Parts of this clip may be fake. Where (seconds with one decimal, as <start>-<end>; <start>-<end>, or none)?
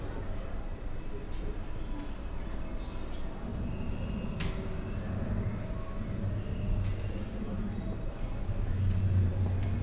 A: none